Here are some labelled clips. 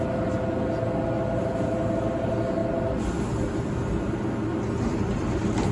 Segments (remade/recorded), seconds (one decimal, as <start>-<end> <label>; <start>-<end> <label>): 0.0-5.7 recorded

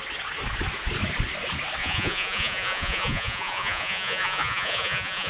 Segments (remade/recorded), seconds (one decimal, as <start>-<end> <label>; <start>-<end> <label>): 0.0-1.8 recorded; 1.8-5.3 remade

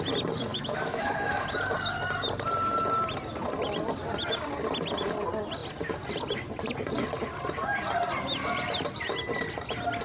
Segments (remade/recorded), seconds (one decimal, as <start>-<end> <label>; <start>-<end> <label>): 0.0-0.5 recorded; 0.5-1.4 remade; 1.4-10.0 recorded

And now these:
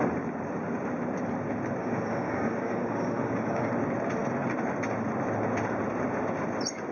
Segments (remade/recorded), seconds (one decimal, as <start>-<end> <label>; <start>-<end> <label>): 0.0-1.8 recorded; 1.8-3.7 remade; 3.7-6.9 recorded

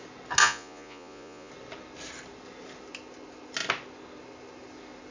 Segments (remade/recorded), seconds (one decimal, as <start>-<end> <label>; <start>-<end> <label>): 0.0-0.4 recorded; 0.4-1.5 remade; 1.5-5.1 recorded

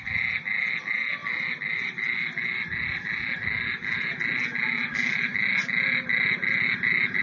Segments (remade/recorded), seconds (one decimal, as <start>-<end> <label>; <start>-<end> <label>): 0.0-7.2 recorded

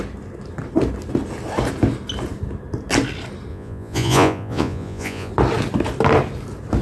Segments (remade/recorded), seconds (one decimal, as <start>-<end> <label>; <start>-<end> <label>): 0.0-3.5 recorded; 3.5-5.3 remade; 5.3-6.8 recorded